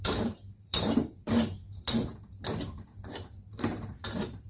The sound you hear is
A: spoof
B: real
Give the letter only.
A